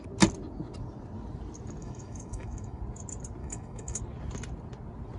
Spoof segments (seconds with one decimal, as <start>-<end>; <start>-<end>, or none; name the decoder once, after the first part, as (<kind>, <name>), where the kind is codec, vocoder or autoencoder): 1.8-2.8 (autoencoder, DAC-VAE); 3.4-4.0